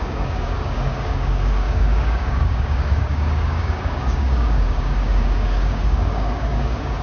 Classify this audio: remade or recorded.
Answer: remade